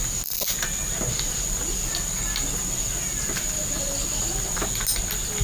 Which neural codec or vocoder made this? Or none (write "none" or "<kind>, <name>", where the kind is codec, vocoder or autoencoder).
none